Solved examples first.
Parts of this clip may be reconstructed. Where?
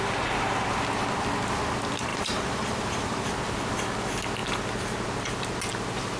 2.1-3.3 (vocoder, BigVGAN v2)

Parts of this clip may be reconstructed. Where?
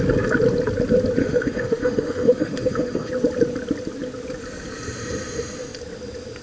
1.2-3.1 (autoencoder, DAC-VAE)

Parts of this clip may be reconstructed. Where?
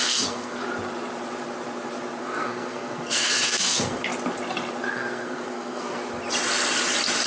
0.0-0.6 (codec, SNAC); 2.2-4.0; 4.9-6.0